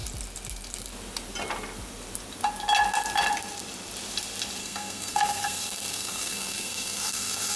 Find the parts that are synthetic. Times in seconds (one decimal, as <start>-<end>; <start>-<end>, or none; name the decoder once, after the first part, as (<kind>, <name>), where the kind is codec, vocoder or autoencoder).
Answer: 4.6-7.6 (codec, SNAC)